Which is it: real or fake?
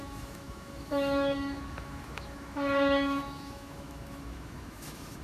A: fake